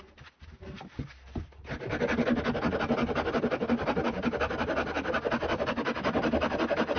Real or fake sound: real